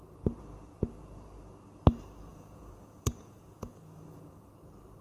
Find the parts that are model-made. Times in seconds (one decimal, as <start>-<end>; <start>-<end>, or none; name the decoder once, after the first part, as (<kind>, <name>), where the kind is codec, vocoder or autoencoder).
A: 2.3-4.5 (vocoder, Vocos)

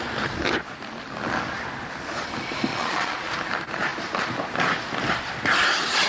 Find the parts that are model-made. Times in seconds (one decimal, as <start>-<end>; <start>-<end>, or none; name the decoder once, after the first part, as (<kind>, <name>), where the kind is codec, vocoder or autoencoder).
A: 2.7-3.3 (vocoder, Vocos)

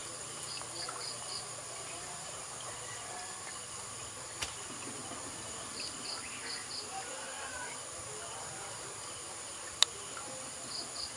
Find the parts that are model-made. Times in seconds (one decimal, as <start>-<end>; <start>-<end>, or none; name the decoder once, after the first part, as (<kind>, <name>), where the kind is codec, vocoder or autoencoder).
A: none

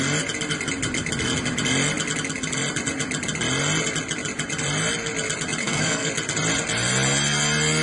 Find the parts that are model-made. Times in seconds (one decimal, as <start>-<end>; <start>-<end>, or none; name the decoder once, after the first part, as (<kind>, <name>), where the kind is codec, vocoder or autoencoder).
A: 5.6-6.1 (codec, SNAC)

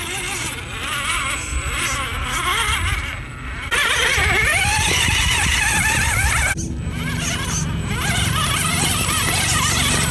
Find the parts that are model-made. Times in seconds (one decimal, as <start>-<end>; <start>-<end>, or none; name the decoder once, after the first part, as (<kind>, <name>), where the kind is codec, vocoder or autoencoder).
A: none